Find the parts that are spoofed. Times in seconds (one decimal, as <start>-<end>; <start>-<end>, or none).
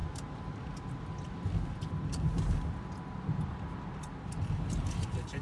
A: none